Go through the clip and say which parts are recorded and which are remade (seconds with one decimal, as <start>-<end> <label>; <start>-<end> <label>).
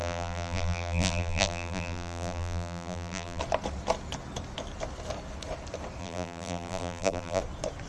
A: 0.0-3.4 remade; 3.4-6.0 recorded; 6.0-7.4 remade; 7.4-7.9 recorded